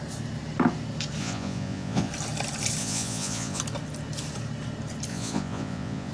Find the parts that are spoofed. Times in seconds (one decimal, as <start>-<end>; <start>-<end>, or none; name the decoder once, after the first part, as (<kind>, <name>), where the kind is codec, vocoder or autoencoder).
1.2-2.1 (vocoder, Vocos); 2.8-3.6; 5.1-6.1